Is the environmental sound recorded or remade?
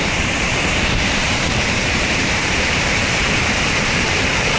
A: remade